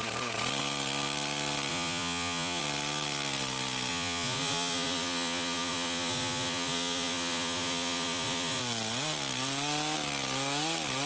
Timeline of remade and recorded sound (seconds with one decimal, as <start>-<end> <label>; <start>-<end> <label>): 0.0-1.7 recorded; 1.7-2.6 remade; 2.6-3.9 recorded; 3.9-8.6 remade; 8.6-11.1 recorded